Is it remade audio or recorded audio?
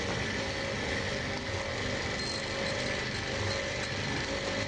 recorded